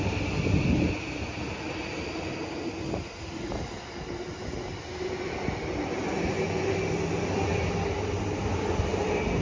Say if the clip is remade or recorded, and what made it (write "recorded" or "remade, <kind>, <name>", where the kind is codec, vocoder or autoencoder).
recorded